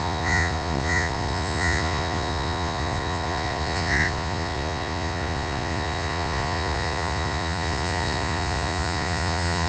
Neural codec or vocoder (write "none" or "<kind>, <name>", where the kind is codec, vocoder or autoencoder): vocoder, Vocos